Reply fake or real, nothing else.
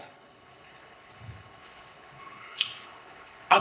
fake